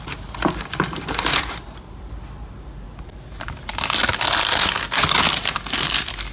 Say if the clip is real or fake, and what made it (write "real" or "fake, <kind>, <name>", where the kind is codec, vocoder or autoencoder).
real